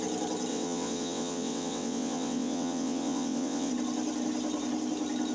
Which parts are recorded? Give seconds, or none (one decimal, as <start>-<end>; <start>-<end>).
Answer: 0.0-0.5; 3.7-5.3